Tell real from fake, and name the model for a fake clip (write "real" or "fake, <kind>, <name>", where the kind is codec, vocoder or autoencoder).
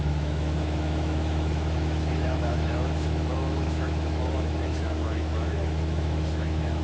fake, autoencoder, DAC-VAE